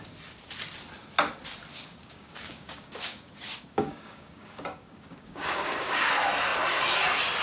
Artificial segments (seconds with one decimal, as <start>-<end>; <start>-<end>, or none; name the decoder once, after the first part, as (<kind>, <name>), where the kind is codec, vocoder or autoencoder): 1.7-6.1 (codec, DAC)